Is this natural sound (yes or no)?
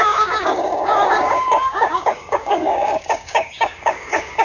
no